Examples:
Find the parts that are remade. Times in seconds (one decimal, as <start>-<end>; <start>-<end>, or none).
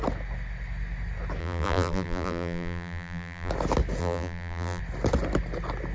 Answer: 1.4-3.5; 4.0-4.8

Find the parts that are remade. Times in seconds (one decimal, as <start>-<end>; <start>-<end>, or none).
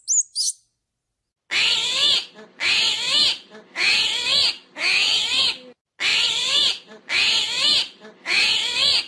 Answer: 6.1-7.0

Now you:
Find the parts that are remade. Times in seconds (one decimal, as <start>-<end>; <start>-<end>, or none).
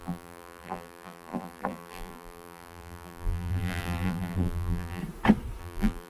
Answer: 0.0-5.0; 5.6-6.1